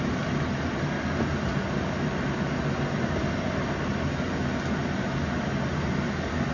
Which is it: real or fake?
real